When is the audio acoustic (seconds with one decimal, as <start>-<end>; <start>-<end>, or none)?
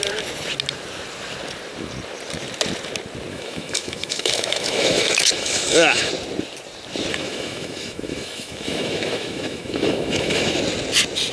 0.0-3.3; 6.1-7.1; 10.6-11.3